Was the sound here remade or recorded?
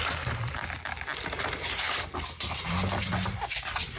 recorded